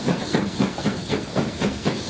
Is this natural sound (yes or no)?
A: no